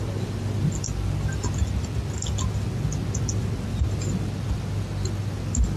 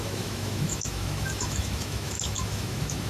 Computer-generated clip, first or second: second